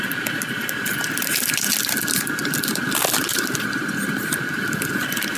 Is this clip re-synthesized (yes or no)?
no